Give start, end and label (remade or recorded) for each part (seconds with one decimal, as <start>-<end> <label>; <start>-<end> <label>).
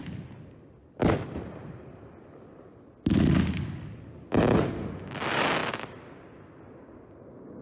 0.0-7.6 recorded